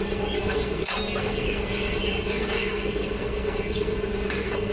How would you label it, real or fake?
fake